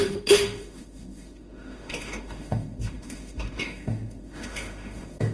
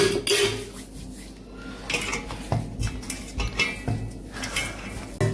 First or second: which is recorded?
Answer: second